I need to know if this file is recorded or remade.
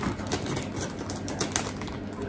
recorded